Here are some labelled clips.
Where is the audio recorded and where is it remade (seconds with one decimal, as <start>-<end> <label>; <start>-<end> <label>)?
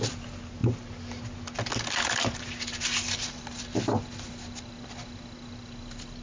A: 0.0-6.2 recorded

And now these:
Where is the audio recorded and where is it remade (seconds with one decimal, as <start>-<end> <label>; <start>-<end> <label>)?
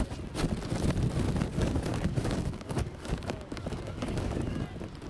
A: 0.0-1.5 recorded; 1.5-4.6 remade; 4.6-5.1 recorded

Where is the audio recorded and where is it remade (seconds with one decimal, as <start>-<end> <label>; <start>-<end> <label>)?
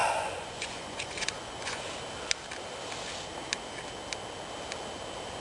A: 0.0-1.8 remade; 1.8-5.4 recorded